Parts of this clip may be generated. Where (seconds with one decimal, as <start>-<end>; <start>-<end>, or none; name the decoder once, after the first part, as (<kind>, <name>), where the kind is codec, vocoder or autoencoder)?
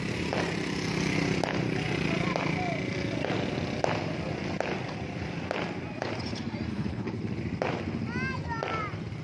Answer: 6.7-7.2 (codec, HILCodec)